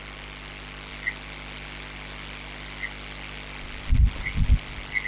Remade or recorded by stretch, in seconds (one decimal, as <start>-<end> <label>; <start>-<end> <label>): 0.0-5.1 recorded